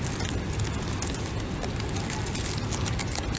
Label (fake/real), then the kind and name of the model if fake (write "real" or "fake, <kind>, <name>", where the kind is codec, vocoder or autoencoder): real